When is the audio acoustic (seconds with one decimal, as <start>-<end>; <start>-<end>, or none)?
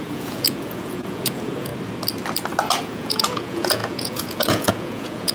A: 1.7-2.8